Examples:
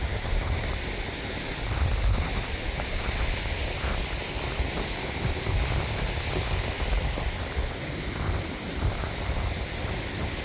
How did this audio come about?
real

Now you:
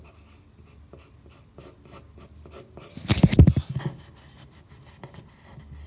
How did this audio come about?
real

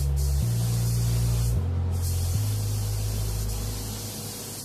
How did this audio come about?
real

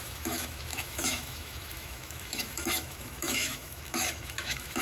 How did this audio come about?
fake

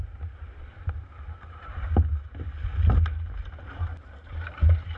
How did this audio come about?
real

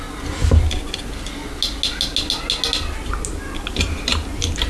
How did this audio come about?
real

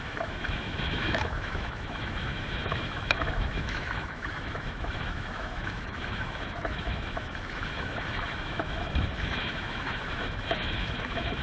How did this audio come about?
fake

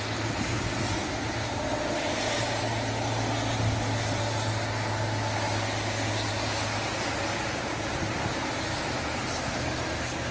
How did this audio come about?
real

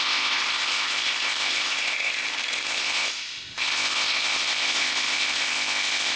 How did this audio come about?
fake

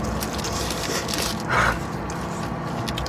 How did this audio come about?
real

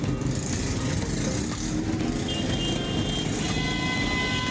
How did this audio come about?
real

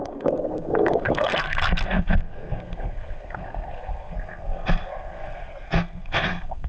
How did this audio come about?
fake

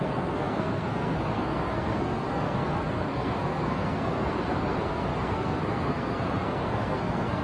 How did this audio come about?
fake